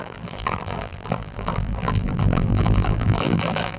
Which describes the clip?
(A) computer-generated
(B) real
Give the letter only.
A